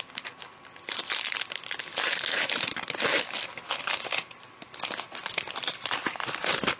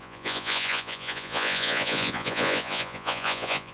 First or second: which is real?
first